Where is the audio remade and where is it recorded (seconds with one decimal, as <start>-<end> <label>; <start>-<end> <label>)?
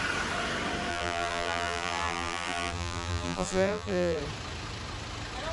0.0-0.9 recorded; 0.9-4.2 remade; 4.2-5.5 recorded